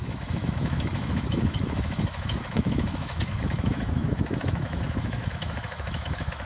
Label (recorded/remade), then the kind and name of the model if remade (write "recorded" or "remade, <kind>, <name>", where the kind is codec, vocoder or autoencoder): remade, autoencoder, DAC-VAE